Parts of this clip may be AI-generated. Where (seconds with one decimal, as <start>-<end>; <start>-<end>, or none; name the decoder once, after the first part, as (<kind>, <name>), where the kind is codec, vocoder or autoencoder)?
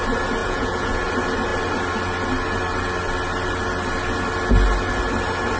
0.4-1.1 (vocoder, Vocos)